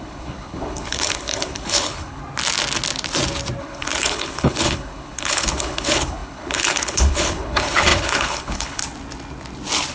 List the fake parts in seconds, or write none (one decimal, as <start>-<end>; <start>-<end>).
0.0-2.2; 3.6-8.8